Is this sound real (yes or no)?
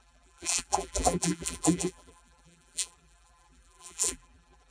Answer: no